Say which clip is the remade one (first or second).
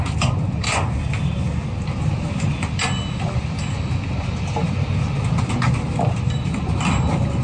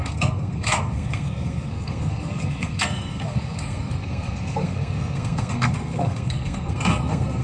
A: second